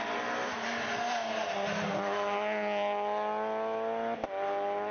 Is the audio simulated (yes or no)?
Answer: no